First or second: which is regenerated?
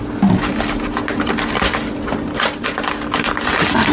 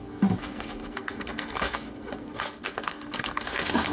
second